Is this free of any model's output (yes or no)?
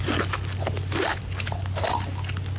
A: yes